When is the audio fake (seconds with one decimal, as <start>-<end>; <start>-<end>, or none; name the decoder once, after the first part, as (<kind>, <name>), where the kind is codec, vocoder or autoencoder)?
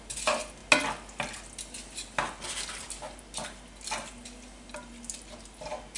none